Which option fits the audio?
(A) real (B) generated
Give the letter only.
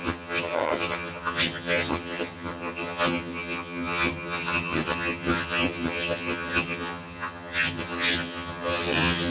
B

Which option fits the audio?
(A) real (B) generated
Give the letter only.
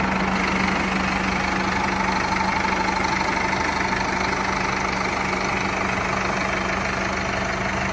A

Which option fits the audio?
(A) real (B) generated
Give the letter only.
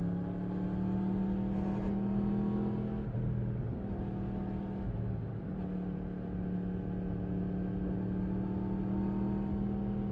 A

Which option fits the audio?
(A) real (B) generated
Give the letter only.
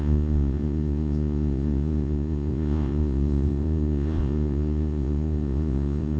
B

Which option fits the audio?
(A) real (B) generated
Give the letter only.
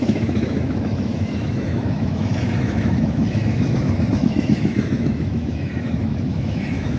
B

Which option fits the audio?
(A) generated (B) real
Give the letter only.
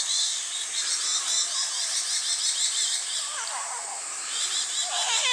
B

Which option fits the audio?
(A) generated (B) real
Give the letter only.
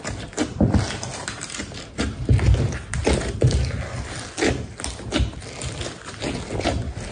B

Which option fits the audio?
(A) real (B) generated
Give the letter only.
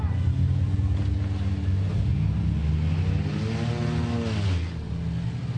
A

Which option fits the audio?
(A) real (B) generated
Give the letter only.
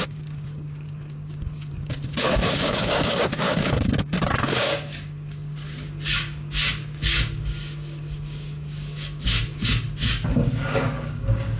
B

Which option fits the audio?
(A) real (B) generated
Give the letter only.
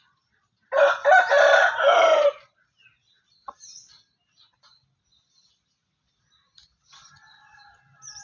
A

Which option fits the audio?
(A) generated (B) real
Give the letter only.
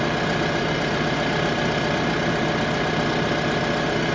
B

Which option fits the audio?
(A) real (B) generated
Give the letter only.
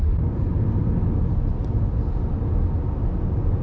A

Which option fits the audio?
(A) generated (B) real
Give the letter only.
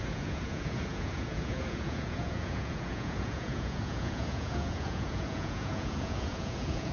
A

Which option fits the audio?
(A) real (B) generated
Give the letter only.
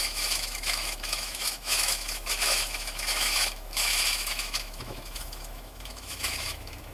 B